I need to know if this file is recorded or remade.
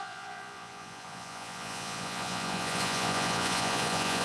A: remade